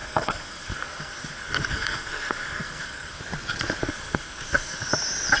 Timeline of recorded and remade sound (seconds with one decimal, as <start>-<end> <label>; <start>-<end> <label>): 0.0-3.2 remade; 3.2-3.8 recorded; 3.8-4.9 remade; 4.9-5.4 recorded